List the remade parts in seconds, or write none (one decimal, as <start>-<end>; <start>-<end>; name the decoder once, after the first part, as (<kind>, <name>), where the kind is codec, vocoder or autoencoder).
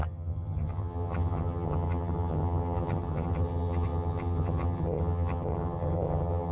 0.0-6.5 (vocoder, HiFi-GAN)